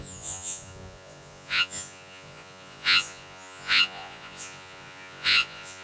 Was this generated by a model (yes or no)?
yes